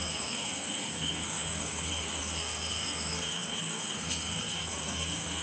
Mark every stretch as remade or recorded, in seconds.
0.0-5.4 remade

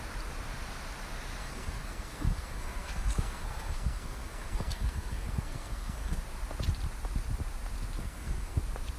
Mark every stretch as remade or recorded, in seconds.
0.0-1.4 recorded; 1.4-6.2 remade; 6.2-8.0 recorded; 8.0-8.6 remade; 8.6-9.0 recorded

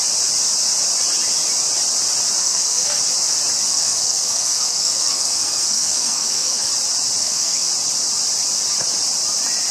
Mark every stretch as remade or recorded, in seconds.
0.0-2.4 recorded; 2.4-3.0 remade; 3.0-3.7 recorded; 3.7-6.7 remade; 6.7-7.2 recorded; 7.2-7.7 remade; 7.7-9.7 recorded

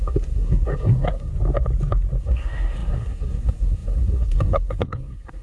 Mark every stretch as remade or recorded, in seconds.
0.0-1.3 remade; 1.3-2.2 recorded; 2.2-5.4 remade

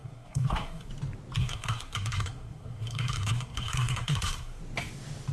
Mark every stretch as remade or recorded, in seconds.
0.0-0.9 remade; 0.9-1.4 recorded; 1.4-4.6 remade; 4.6-5.3 recorded

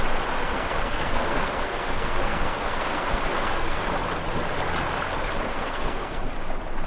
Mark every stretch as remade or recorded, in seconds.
0.0-0.4 recorded; 0.4-3.9 remade; 3.9-5.5 recorded; 5.5-6.2 remade; 6.2-6.9 recorded

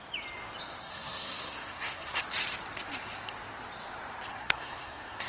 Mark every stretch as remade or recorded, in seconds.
0.0-0.8 recorded; 0.8-2.2 remade; 2.2-4.3 recorded; 4.3-5.3 remade

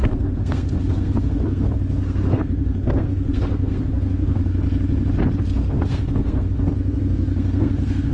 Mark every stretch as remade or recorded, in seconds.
0.0-4.4 remade; 4.4-5.4 recorded; 5.4-8.1 remade